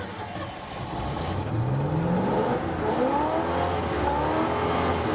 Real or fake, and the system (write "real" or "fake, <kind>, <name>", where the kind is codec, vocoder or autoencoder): real